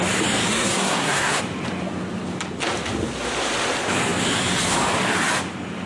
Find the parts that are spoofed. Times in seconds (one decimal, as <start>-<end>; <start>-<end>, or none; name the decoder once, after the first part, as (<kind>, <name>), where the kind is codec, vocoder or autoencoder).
0.5-1.4 (codec, SNAC)